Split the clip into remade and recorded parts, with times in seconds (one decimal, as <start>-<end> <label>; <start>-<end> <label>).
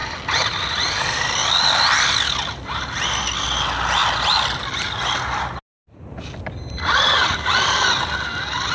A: 0.0-8.7 recorded